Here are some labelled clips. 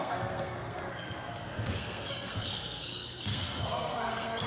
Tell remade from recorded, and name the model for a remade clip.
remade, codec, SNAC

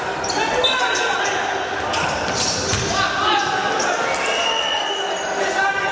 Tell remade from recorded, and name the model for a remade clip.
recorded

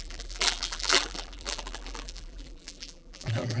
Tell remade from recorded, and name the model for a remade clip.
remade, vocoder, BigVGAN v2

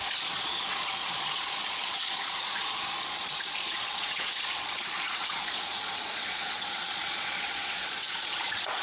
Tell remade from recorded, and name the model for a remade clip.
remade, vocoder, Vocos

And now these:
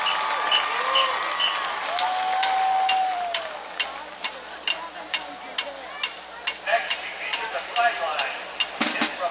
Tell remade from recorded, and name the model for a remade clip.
recorded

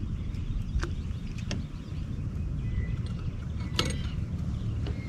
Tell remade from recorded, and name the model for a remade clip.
recorded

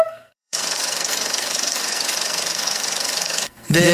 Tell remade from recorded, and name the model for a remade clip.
remade, codec, SNAC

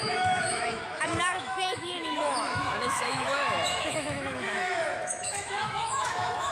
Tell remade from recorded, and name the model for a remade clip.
remade, autoencoder, DAC-VAE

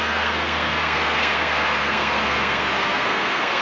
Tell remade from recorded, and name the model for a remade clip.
remade, codec, SNAC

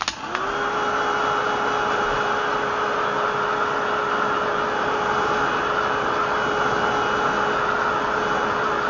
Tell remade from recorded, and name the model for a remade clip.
recorded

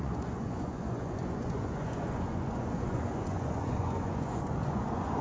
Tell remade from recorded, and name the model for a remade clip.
remade, vocoder, Vocos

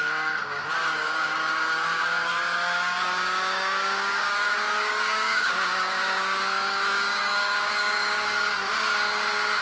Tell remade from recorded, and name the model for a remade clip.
remade, codec, DAC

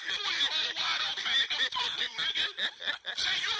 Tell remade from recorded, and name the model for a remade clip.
remade, vocoder, BigVGAN v2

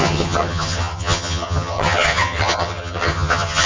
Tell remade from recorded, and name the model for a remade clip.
remade, vocoder, HiFi-GAN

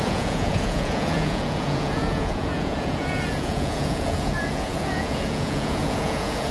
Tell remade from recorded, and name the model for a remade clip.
remade, vocoder, Vocos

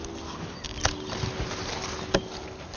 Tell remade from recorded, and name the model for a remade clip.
recorded